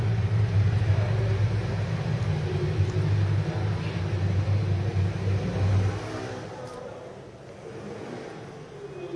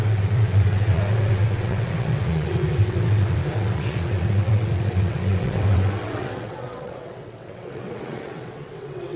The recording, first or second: first